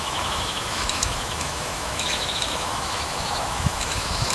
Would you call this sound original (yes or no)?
no